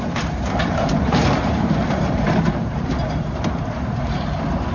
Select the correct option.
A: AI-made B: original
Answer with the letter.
A